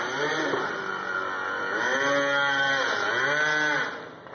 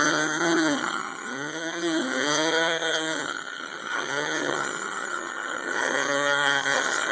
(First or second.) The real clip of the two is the first